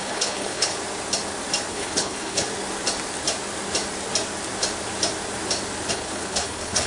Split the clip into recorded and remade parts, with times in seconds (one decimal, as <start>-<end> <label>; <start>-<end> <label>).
0.0-0.7 remade; 0.7-1.7 recorded; 1.7-2.5 remade; 2.5-5.9 recorded; 5.9-6.9 remade